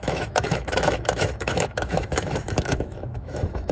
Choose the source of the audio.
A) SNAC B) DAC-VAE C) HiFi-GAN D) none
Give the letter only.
B